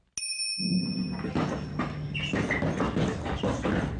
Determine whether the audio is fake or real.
real